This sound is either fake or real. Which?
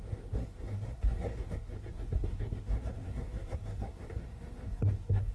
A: fake